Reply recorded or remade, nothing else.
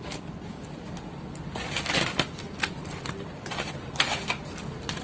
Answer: recorded